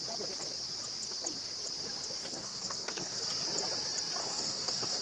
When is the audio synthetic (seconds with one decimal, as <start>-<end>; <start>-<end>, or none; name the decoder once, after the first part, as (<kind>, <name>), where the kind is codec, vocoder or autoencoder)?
2.2-3.2 (codec, SNAC); 4.2-5.0